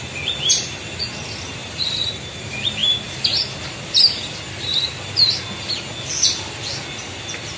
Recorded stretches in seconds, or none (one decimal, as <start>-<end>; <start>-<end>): 0.0-1.6; 2.4-7.6